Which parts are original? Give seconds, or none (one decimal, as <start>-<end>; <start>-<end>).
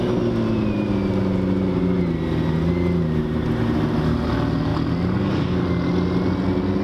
0.0-6.8